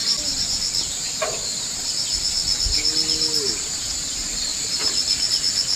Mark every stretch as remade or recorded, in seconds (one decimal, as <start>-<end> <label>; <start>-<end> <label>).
0.0-5.8 recorded